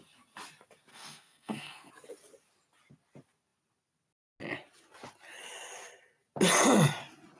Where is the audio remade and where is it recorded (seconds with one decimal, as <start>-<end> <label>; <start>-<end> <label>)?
0.0-0.9 recorded; 0.9-1.9 remade; 1.9-7.4 recorded